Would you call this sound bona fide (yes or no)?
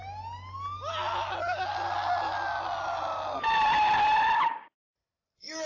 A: yes